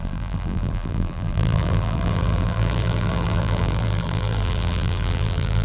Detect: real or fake fake